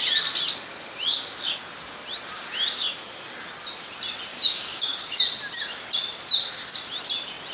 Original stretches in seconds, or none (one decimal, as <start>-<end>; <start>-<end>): 0.0-4.3; 5.2-7.5